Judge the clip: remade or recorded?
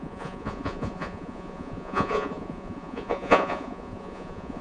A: remade